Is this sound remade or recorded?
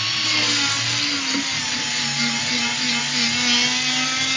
recorded